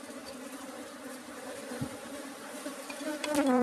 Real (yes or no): no